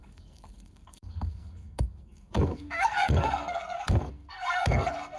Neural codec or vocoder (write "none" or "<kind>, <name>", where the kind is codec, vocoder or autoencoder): codec, SNAC